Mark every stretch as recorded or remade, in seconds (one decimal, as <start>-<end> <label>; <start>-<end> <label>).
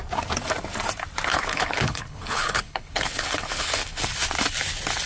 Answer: 0.0-1.3 recorded; 1.3-4.0 remade; 4.0-5.1 recorded